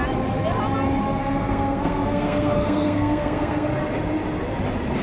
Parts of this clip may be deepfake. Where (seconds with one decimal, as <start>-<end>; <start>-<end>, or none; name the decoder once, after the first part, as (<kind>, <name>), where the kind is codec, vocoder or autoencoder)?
1.2-3.7 (codec, SNAC)

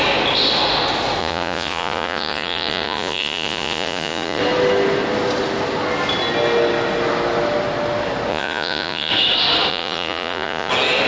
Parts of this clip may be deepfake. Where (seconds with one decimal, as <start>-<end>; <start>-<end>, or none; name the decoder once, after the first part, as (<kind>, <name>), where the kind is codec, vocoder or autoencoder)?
1.2-4.4 (vocoder, Vocos); 8.3-9.1; 9.7-10.7

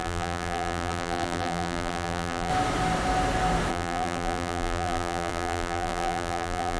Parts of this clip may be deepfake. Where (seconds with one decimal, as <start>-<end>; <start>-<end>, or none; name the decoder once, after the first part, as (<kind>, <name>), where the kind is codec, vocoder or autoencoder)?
0.0-2.5 (vocoder, BigVGAN v2); 3.7-6.8

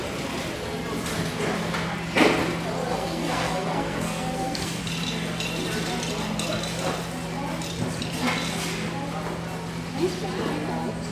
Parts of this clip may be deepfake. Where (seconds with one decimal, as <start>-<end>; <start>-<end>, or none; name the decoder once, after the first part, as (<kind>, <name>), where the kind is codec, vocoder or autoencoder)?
2.9-4.8 (codec, SNAC)

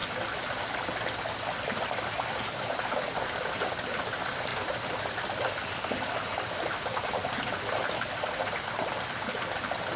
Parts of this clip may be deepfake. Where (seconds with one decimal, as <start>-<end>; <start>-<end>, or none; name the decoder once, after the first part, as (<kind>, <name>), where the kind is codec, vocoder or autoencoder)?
none